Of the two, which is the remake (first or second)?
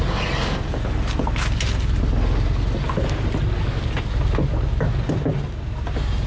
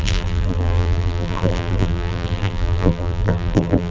second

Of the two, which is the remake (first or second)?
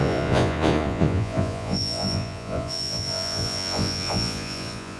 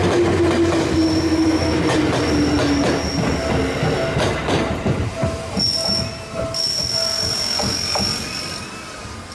first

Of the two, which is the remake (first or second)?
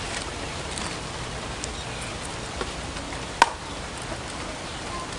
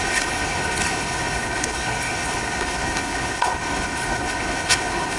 second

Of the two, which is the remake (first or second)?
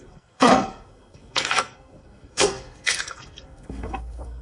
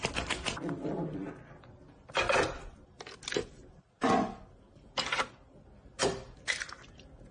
first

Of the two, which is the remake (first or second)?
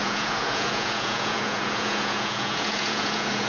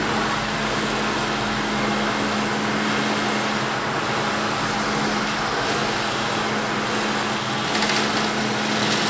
first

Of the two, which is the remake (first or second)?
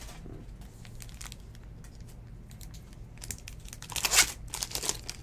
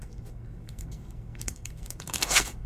second